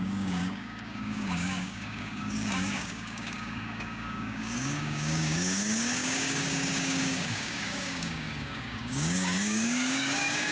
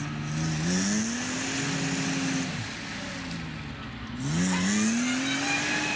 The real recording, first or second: second